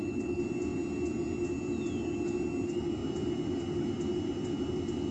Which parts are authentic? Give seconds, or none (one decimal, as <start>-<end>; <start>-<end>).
0.0-5.1